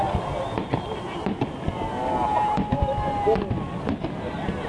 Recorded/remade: recorded